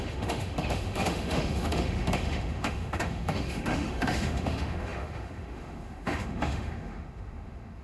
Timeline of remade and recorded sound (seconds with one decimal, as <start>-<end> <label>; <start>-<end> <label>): 0.0-7.8 remade